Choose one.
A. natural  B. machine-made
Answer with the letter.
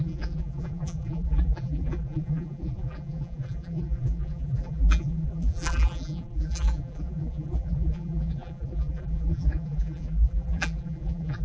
B